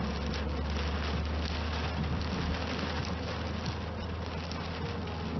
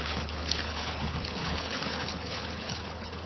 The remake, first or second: second